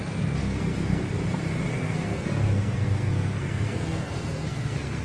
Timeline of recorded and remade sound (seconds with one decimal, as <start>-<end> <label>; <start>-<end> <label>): 0.0-0.4 recorded; 0.4-1.0 remade; 1.0-1.7 recorded; 1.7-5.0 remade